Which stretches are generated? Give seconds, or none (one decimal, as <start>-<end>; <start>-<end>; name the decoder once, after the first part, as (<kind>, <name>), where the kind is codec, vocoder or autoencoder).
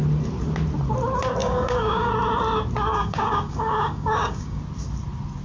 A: 1.4-2.1 (codec, DAC); 2.9-4.6